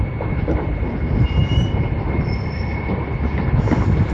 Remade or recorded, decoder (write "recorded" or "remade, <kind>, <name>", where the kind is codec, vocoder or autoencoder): recorded